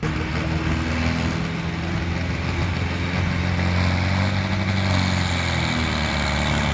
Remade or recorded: recorded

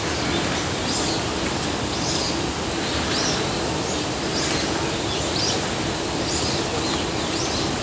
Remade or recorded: recorded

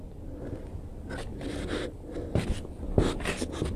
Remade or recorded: recorded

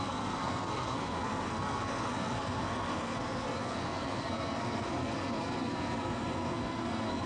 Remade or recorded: remade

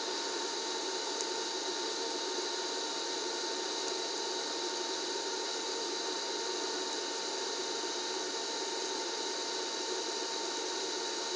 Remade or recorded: remade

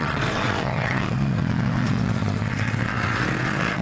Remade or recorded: remade